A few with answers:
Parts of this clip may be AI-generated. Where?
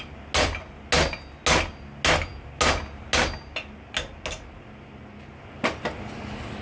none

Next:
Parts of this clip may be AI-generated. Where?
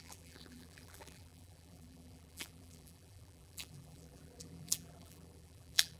0.0-6.0 (vocoder, BigVGAN v2)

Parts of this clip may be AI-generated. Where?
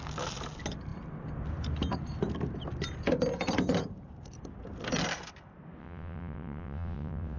5.8-7.4 (vocoder, WaveNeXt)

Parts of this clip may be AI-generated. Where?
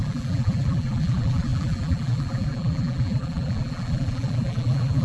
0.0-5.0 (vocoder, BigVGAN v2)